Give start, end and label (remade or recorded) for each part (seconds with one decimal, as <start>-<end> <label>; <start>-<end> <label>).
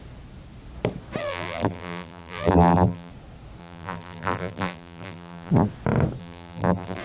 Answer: 0.0-1.2 recorded; 1.2-3.1 remade; 3.1-3.6 recorded; 3.6-5.5 remade; 5.5-6.2 recorded; 6.2-7.0 remade